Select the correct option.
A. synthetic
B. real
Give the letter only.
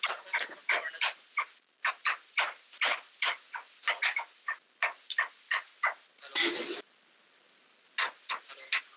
B